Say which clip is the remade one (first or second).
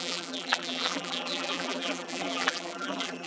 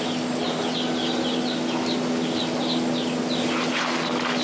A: first